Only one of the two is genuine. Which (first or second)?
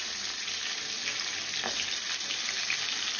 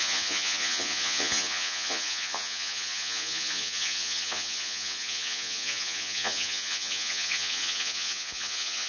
first